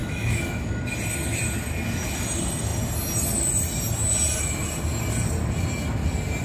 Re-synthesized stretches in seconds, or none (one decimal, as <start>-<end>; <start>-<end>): 0.0-0.8